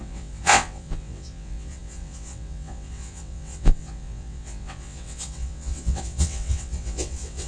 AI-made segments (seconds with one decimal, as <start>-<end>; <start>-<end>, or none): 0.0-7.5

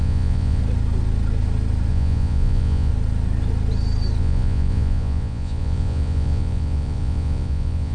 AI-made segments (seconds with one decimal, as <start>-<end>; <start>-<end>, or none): 0.0-0.6; 1.9-2.9; 4.2-7.9

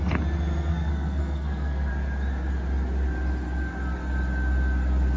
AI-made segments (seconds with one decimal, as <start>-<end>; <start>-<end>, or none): 0.7-1.9

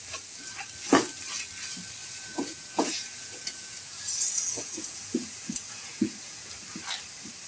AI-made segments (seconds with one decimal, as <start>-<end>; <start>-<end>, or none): 2.0-6.5

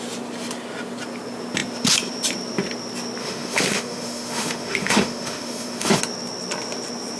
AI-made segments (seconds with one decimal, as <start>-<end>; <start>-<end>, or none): 3.2-6.0

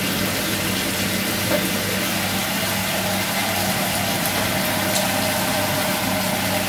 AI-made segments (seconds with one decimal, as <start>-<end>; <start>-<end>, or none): 3.4-4.6

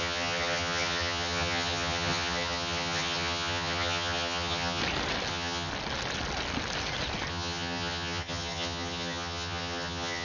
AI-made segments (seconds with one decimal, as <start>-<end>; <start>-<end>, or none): 0.0-4.8; 5.3-5.7; 7.3-10.2

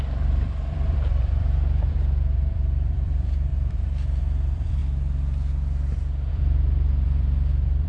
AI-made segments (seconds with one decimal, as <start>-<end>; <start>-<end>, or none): 0.0-4.8; 6.3-7.9